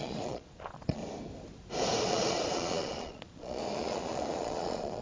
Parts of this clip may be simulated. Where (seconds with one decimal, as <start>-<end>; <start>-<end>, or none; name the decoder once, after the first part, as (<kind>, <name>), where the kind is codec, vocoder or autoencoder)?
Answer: 0.0-1.0 (vocoder, Vocos); 2.0-5.0